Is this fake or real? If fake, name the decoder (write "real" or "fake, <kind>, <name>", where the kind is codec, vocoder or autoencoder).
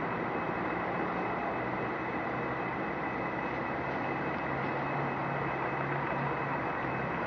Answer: real